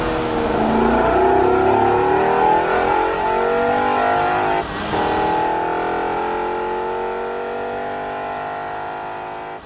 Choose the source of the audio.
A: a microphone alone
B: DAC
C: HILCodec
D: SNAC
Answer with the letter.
A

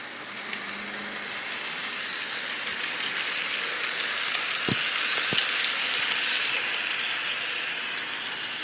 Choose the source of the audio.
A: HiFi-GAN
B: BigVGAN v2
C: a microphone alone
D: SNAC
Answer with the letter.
C